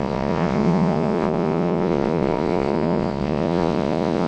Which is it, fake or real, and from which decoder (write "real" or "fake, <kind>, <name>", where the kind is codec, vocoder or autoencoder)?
fake, vocoder, Vocos